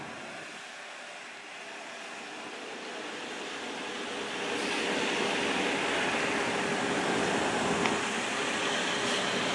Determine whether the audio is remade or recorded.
recorded